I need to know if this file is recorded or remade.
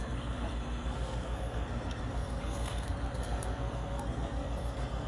remade